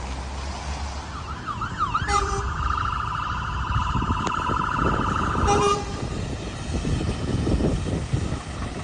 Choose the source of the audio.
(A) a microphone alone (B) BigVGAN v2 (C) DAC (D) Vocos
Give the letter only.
A